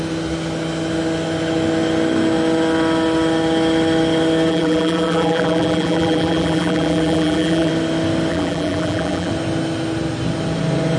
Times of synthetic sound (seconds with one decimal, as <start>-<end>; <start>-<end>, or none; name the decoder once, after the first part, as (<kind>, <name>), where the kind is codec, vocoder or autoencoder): 4.5-7.7 (vocoder, BigVGAN v2); 8.3-9.3

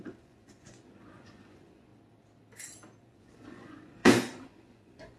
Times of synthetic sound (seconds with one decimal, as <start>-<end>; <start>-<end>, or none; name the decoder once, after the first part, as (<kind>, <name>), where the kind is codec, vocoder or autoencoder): 0.0-1.9 (vocoder, Vocos); 3.0-5.2